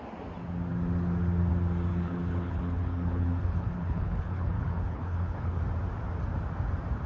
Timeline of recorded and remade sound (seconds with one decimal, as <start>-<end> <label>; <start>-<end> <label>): 0.0-1.9 recorded; 1.9-5.6 remade; 5.6-7.1 recorded